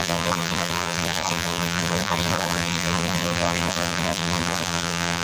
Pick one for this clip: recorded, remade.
remade